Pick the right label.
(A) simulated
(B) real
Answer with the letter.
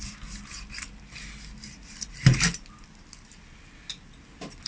B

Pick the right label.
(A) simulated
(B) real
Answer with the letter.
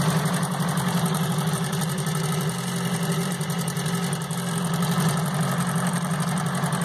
A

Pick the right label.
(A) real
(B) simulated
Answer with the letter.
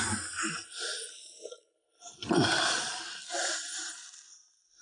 A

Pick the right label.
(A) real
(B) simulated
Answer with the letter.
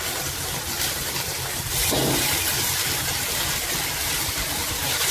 A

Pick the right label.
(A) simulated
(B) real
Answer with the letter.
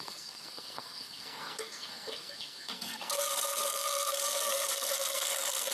A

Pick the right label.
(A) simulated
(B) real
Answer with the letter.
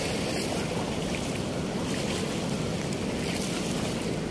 B